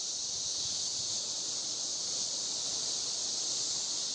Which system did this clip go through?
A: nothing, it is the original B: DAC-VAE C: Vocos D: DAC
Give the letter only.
A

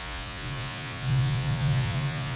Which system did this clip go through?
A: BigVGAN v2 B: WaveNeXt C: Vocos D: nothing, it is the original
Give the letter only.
C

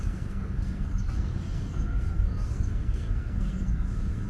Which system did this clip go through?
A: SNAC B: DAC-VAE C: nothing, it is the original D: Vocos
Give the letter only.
A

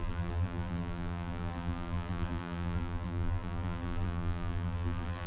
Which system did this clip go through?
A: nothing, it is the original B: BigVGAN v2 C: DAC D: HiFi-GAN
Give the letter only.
B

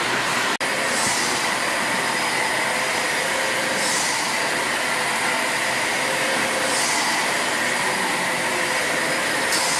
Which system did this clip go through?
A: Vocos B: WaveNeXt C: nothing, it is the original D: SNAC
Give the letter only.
C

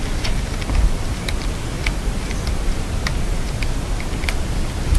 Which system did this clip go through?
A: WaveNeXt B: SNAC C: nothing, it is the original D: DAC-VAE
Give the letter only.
C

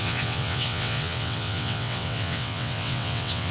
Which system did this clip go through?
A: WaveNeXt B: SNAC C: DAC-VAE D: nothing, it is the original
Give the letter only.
A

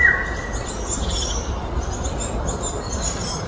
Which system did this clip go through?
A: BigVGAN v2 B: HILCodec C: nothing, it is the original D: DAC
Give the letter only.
C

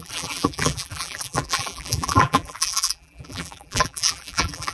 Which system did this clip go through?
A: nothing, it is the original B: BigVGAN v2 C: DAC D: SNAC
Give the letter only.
B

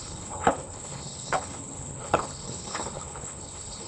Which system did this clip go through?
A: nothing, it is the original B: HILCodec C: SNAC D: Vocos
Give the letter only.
B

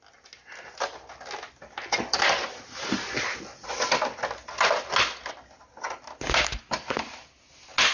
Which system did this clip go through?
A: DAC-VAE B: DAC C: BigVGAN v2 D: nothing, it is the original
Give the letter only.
D